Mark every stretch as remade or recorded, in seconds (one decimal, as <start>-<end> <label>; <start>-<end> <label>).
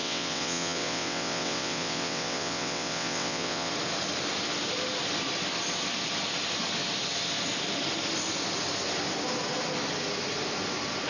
0.0-3.7 remade; 3.7-11.1 recorded